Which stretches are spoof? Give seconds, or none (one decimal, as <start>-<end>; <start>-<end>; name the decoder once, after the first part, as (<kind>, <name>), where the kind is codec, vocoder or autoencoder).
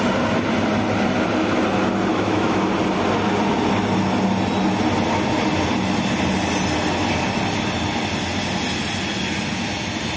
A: 2.1-2.6 (autoencoder, DAC-VAE)